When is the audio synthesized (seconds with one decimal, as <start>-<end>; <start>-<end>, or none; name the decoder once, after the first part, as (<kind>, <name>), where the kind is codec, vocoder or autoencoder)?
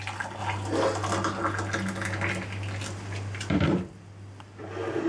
none